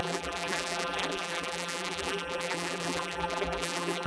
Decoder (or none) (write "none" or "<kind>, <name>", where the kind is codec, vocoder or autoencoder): vocoder, BigVGAN v2